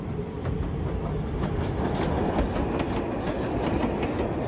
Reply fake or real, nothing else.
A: real